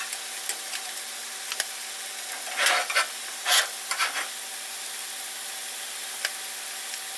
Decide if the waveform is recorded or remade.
recorded